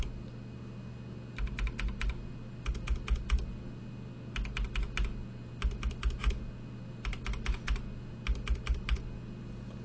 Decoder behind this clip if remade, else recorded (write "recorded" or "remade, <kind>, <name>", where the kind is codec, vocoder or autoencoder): recorded